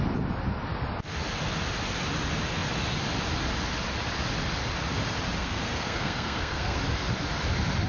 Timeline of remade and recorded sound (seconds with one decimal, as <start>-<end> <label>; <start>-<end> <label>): 0.0-5.4 recorded; 5.4-6.8 remade; 6.8-7.9 recorded